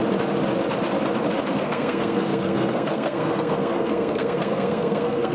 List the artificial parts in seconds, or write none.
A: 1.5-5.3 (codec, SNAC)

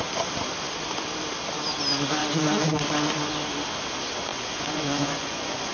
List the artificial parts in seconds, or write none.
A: 4.3-5.7 (vocoder, Vocos)